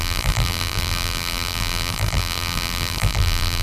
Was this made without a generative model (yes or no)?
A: no